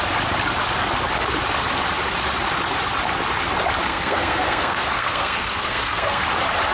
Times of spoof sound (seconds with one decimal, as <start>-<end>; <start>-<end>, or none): 3.9-6.2